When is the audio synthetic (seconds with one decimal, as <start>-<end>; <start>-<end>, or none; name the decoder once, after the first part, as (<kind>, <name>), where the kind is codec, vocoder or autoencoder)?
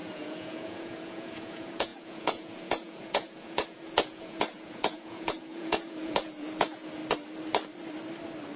0.0-7.0 (vocoder, Vocos)